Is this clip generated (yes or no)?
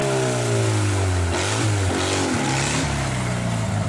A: no